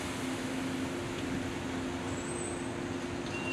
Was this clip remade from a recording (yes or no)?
no